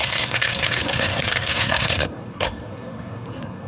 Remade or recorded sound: remade